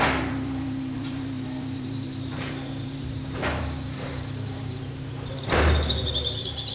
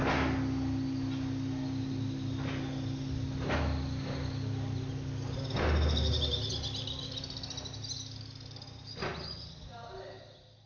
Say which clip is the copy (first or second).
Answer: first